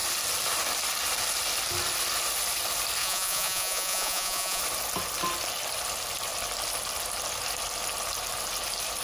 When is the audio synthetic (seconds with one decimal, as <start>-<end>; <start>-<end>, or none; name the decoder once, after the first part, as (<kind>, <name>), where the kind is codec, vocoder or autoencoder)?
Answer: 3.0-4.6 (vocoder, Vocos)